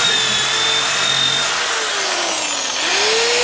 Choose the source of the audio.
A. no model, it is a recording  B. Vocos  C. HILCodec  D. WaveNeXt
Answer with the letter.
A